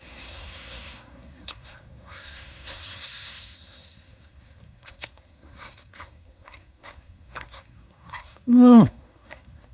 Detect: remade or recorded remade